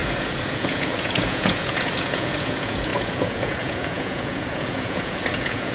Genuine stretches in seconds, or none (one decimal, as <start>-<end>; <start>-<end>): none